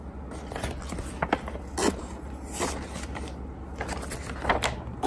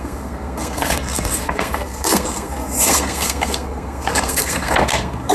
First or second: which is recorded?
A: first